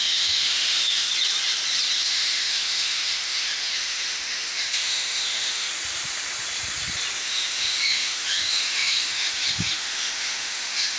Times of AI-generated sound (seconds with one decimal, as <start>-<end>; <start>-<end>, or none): 0.0-1.1; 2.0-5.7; 7.2-11.0